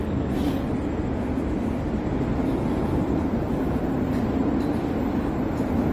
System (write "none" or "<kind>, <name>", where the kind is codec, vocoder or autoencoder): none